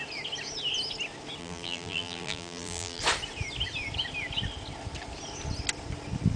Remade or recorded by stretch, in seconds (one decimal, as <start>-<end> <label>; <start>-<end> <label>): 0.0-1.4 recorded; 1.4-3.0 remade; 3.0-6.4 recorded